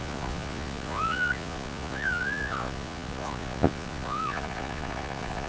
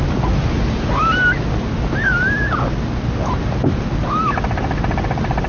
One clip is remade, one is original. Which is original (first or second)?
second